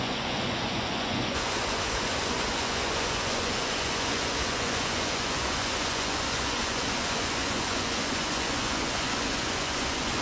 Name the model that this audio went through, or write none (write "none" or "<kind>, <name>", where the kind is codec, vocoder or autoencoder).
vocoder, Vocos